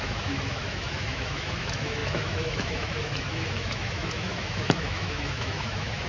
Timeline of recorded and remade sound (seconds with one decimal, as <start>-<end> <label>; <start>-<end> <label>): 0.0-6.1 remade